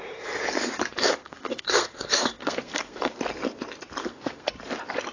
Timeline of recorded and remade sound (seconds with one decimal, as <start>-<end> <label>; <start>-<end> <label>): 0.0-1.0 recorded; 1.0-3.1 remade; 3.1-4.0 recorded; 4.0-4.5 remade; 4.5-5.1 recorded

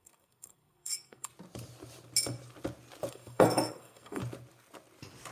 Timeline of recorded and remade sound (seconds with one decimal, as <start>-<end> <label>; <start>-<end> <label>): 0.0-1.3 remade; 1.3-3.1 recorded; 3.1-4.2 remade; 4.2-5.3 recorded

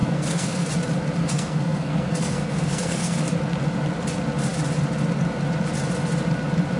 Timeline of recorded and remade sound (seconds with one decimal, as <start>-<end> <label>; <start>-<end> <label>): 0.0-0.7 remade; 0.7-1.2 recorded; 1.2-3.3 remade; 3.3-6.8 recorded

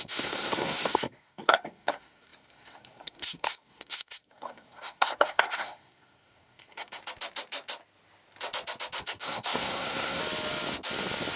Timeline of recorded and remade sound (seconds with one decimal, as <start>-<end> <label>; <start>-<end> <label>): 0.0-7.0 remade; 7.0-9.0 recorded; 9.0-10.2 remade; 10.2-11.4 recorded

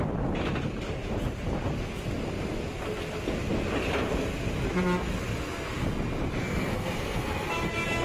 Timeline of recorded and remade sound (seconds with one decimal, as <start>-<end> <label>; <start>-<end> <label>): 0.0-6.4 recorded; 6.4-7.4 remade; 7.4-8.0 recorded

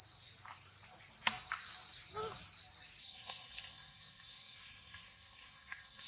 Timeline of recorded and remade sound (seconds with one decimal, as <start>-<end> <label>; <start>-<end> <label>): 0.0-3.0 recorded; 3.0-6.1 remade

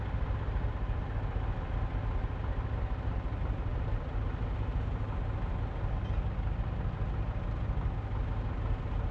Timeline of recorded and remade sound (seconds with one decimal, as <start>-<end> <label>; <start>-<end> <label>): 0.0-9.1 recorded

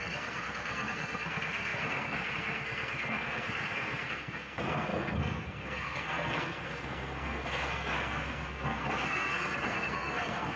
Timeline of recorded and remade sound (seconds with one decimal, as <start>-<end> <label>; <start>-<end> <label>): 0.0-10.6 remade